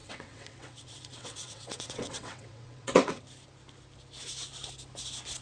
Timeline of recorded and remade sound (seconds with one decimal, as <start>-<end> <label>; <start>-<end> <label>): 0.0-3.2 remade; 3.2-5.4 recorded